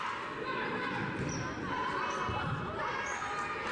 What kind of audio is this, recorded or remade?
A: recorded